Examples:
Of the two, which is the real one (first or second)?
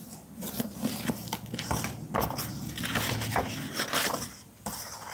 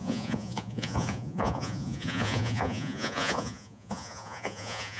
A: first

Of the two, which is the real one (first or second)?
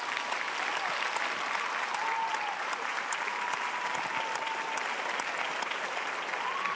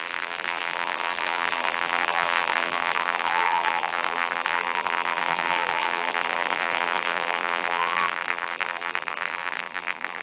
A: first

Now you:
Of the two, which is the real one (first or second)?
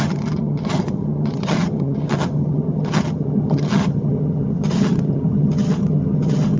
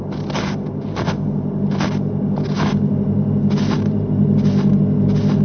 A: second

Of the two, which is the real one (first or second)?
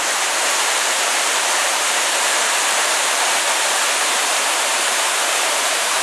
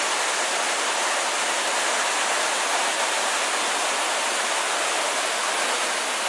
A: second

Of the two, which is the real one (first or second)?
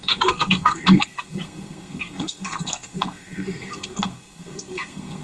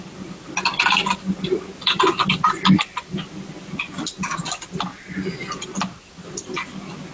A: second